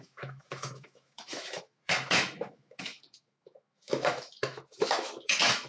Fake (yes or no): yes